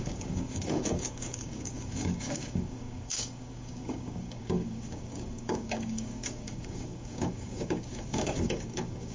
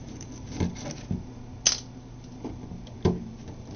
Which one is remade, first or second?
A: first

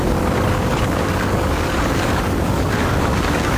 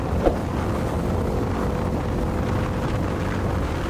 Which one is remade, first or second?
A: first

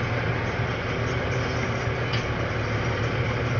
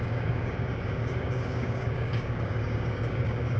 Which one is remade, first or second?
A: second